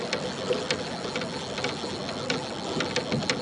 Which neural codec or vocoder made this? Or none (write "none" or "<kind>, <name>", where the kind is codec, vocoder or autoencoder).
none